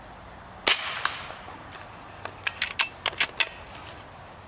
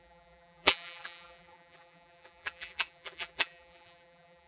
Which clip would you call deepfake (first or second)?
second